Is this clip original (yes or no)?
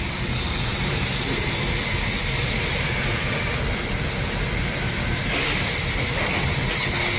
yes